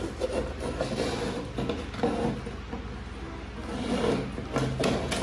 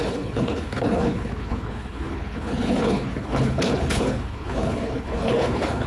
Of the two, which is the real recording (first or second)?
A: first